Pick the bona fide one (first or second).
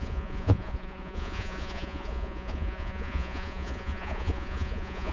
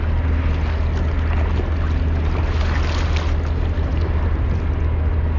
second